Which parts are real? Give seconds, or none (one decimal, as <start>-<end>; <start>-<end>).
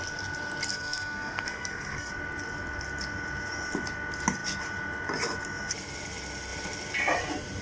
0.0-0.7; 2.1-7.6